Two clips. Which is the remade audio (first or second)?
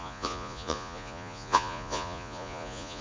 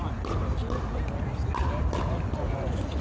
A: first